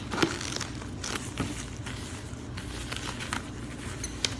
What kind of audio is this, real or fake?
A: real